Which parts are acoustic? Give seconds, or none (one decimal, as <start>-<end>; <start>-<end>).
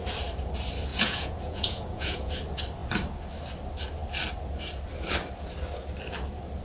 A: 0.0-0.9; 2.3-6.6